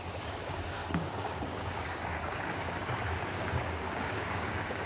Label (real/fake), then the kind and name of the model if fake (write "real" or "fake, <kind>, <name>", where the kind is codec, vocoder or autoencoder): fake, codec, DAC